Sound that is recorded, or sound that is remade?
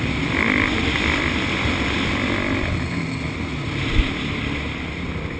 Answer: recorded